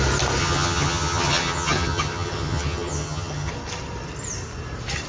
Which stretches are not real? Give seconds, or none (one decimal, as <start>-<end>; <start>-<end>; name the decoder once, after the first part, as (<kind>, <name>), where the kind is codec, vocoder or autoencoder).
0.4-3.5 (vocoder, HiFi-GAN)